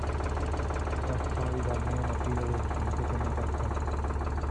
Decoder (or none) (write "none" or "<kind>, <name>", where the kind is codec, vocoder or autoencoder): none